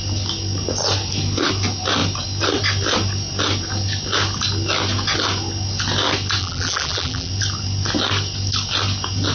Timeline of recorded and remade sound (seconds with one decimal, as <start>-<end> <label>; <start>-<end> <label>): 0.0-6.4 recorded; 6.4-7.3 remade; 7.3-9.3 recorded